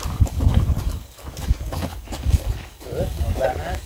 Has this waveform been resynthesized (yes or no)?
yes